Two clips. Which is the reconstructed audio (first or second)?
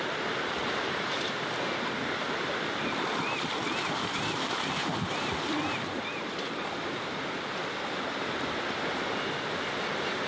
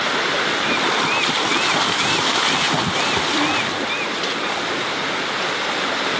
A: first